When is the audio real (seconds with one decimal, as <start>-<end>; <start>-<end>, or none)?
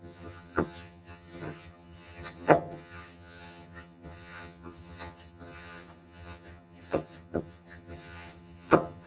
none